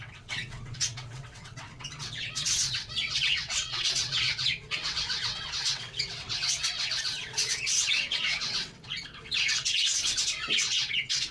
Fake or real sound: fake